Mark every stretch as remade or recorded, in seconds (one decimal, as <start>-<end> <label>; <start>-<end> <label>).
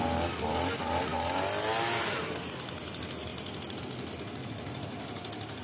0.0-5.6 recorded